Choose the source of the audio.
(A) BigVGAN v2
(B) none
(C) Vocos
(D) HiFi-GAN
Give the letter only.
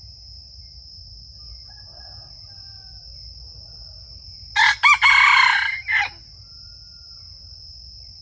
B